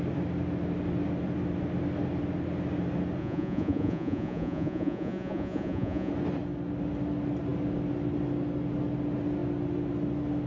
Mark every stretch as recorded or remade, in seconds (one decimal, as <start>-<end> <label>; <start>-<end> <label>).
0.0-3.2 recorded; 3.2-6.1 remade; 6.1-10.5 recorded